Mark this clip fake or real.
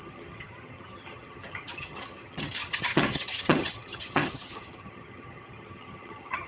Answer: fake